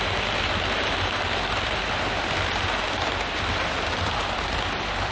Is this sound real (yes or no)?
yes